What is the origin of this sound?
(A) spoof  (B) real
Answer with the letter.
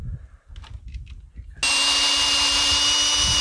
B